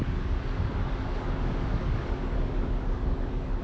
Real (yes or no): no